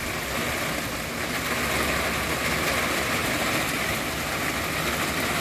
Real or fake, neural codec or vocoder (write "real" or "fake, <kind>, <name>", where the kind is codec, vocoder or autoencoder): real